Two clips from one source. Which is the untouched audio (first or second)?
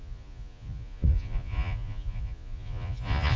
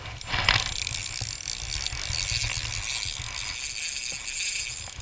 second